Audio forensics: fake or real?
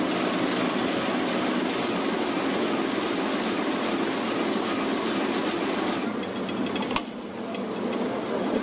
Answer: real